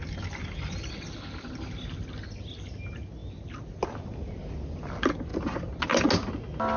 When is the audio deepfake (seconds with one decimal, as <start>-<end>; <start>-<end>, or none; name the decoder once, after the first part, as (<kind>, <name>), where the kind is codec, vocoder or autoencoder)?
none